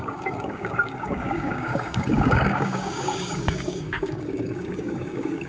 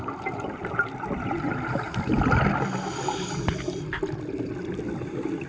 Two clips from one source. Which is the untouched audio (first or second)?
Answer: second